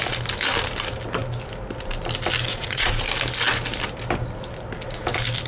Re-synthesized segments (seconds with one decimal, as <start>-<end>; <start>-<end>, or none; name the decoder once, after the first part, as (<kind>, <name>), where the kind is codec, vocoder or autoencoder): 2.5-3.0 (vocoder, Vocos)